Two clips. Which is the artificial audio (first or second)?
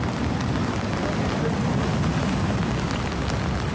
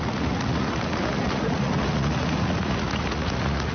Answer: second